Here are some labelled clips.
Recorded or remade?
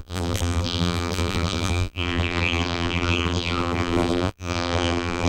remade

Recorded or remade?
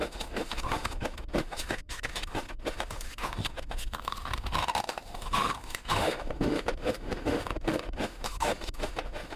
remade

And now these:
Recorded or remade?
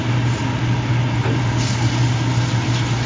recorded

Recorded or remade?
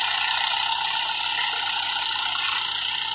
recorded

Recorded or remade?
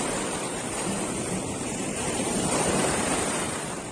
remade